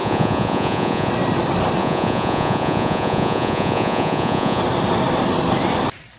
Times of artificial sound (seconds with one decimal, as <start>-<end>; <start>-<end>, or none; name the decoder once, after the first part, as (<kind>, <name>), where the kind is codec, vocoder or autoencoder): 0.0-1.1 (vocoder, Vocos); 1.8-4.6